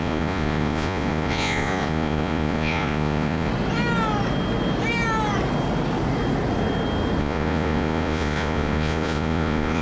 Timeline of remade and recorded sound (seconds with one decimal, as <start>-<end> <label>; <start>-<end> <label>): 0.0-3.5 remade; 3.5-7.2 recorded; 7.2-9.8 remade